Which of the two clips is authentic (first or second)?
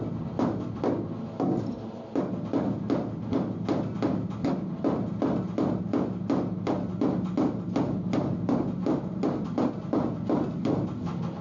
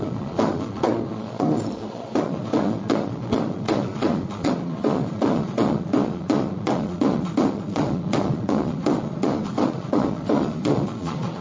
first